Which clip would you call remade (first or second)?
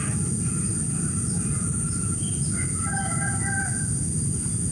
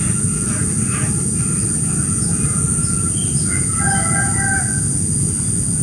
first